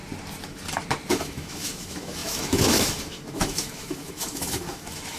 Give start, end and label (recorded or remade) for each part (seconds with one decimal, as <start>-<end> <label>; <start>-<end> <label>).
0.0-1.1 recorded; 1.1-5.2 remade